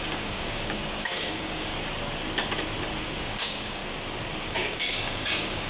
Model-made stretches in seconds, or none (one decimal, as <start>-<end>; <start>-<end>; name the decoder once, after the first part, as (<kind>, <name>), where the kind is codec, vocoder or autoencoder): 0.0-1.7 (codec, DAC); 3.0-3.8; 4.4-5.7